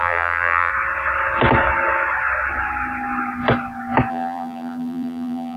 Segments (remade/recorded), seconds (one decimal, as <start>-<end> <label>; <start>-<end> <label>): 0.0-0.7 remade; 0.7-4.1 recorded; 4.1-5.6 remade